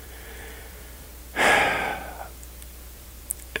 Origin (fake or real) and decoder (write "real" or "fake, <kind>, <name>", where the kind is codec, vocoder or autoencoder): fake, vocoder, BigVGAN v2